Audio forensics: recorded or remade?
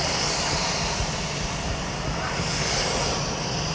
recorded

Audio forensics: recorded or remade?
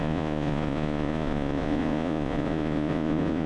remade